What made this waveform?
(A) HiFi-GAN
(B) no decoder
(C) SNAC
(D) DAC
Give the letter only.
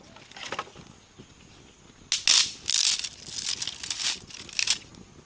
B